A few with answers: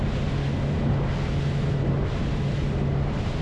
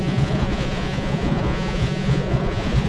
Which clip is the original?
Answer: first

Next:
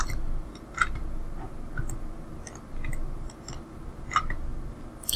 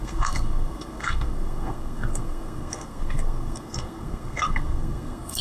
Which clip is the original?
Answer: first